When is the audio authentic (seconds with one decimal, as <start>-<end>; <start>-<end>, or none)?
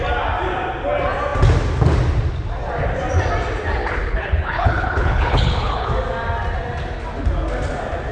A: 0.0-3.8; 5.9-8.1